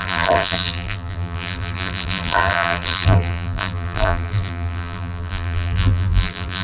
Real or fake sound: fake